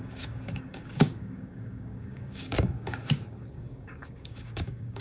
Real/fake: fake